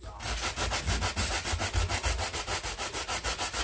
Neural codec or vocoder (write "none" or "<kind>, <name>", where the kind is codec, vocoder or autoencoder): none